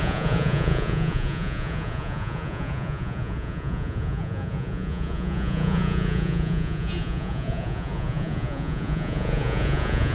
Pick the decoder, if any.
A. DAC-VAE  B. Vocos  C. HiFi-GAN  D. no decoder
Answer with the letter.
B